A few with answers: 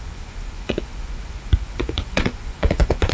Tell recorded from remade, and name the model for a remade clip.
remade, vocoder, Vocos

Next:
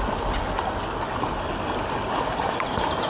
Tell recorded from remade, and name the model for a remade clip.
recorded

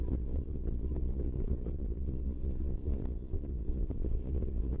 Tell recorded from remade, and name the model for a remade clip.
remade, vocoder, Vocos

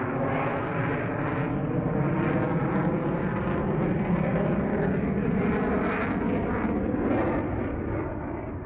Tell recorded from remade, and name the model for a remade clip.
recorded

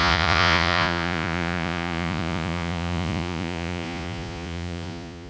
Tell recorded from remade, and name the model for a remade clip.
remade, vocoder, Vocos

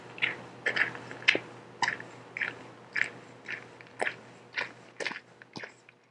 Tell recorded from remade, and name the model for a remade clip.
recorded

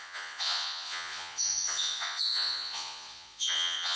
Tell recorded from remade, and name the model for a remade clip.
remade, vocoder, Vocos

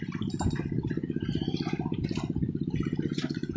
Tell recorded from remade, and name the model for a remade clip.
recorded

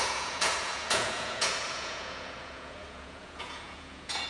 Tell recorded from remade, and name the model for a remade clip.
remade, vocoder, Vocos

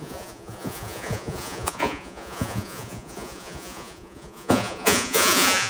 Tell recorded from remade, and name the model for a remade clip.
remade, vocoder, Vocos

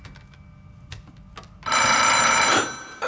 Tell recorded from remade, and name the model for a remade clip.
recorded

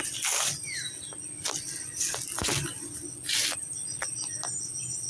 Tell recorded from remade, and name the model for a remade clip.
recorded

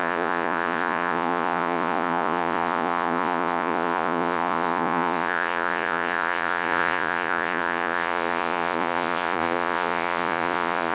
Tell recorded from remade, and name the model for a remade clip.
remade, vocoder, Vocos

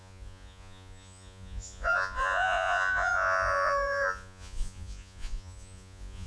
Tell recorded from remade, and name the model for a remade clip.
remade, vocoder, Vocos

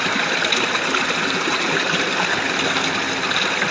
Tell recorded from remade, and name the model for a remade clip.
recorded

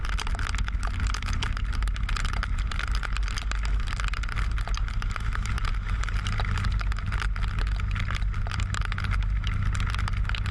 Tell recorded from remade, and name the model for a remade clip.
recorded